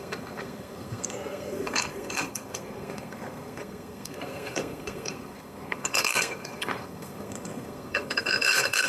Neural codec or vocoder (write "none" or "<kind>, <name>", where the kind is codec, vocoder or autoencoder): codec, SNAC